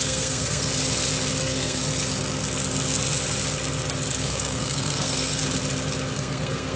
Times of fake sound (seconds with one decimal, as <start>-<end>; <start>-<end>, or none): 0.0-0.7; 1.4-1.8; 4.1-5.4; 6.1-6.8